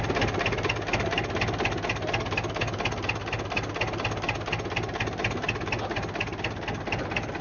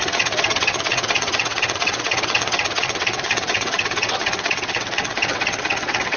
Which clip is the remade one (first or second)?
second